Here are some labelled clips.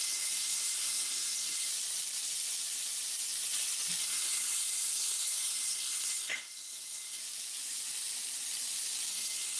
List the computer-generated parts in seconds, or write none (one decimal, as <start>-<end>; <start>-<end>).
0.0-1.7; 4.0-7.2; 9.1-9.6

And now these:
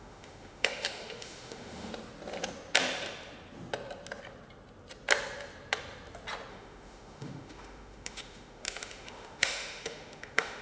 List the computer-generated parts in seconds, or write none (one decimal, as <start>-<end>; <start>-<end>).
0.0-1.9; 6.5-10.6

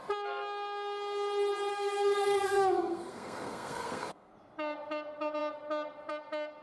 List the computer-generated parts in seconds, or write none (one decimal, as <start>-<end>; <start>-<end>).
1.7-4.3

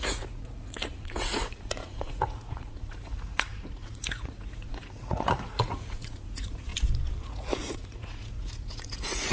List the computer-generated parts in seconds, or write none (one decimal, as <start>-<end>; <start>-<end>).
0.0-6.7; 7.3-9.3

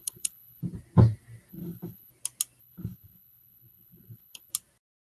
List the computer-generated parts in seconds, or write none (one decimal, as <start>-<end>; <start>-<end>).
0.0-0.6; 1.5-2.1; 2.6-4.5

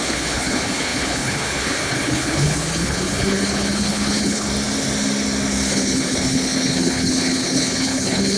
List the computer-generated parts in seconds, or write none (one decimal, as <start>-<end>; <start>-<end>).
0.0-4.5; 5.7-8.4